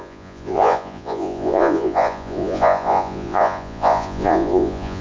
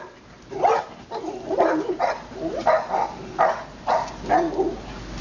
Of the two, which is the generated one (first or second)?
first